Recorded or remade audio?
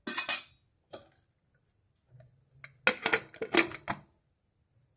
recorded